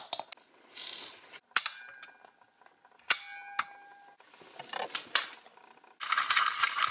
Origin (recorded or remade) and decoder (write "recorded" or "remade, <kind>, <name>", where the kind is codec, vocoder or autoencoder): recorded